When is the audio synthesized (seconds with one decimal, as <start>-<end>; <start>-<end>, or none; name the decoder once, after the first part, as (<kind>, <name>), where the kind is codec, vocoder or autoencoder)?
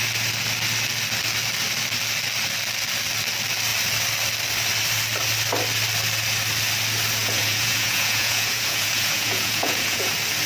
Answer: 7.2-10.1 (vocoder, Vocos)